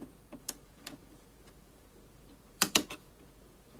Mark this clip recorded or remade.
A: remade